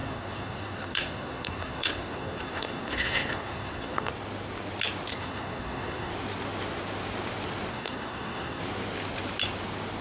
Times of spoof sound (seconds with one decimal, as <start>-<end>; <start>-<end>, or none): 0.0-4.1; 5.1-6.1; 7.7-8.6